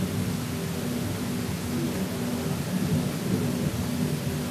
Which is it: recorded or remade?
recorded